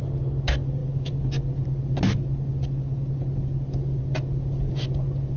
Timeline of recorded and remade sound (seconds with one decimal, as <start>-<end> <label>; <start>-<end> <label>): 0.0-5.4 recorded